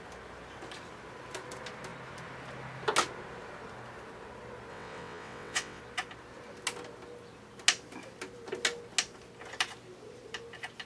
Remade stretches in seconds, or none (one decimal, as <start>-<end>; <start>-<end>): 4.7-5.8